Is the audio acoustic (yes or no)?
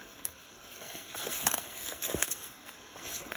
no